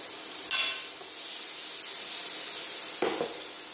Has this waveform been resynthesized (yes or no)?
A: no